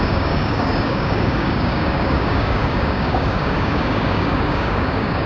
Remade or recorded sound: remade